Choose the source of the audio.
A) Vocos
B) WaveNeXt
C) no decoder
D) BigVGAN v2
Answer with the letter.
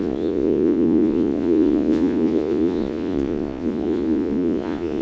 A